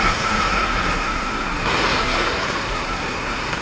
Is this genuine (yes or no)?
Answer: no